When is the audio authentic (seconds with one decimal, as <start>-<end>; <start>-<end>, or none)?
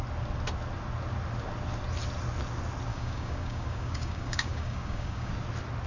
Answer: 0.0-2.9; 5.3-5.9